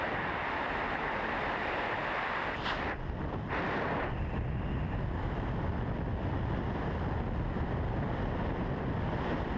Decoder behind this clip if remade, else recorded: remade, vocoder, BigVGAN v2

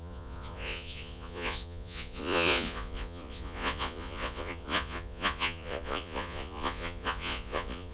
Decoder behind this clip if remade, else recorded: remade, vocoder, Vocos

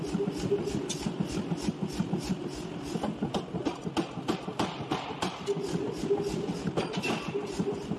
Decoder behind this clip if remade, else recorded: recorded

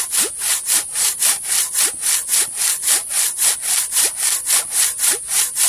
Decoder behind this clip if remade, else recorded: recorded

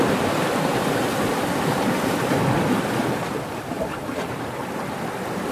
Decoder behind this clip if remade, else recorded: remade, vocoder, BigVGAN v2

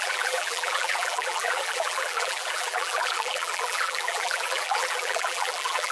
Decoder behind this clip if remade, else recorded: remade, vocoder, BigVGAN v2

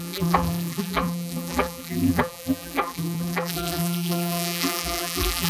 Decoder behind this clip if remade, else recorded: remade, vocoder, BigVGAN v2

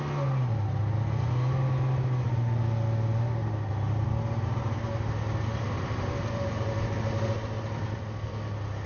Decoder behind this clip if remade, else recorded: recorded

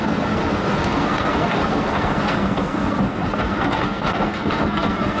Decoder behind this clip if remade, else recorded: remade, codec, SNAC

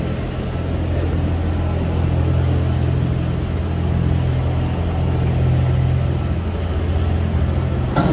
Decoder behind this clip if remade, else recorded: recorded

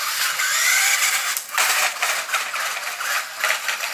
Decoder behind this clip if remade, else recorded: recorded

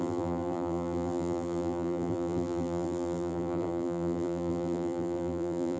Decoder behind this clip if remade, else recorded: remade, vocoder, BigVGAN v2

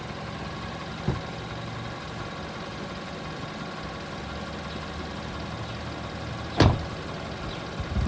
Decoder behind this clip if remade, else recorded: recorded